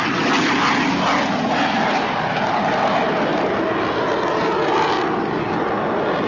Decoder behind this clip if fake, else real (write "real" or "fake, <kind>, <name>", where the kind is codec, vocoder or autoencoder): real